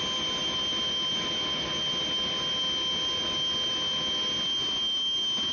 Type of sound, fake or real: real